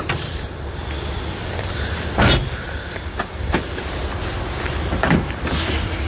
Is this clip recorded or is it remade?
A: remade